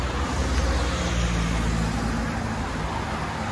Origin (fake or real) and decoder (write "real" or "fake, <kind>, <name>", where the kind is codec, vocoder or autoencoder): real